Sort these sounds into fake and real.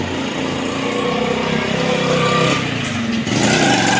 real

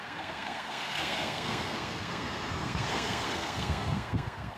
fake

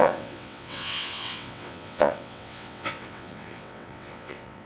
fake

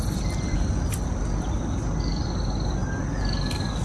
real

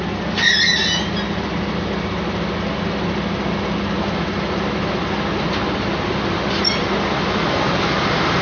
real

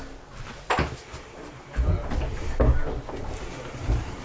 real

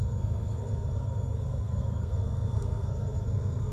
fake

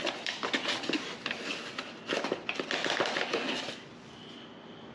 real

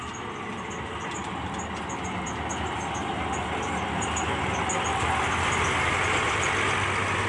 real